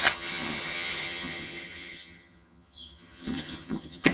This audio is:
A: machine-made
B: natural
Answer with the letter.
A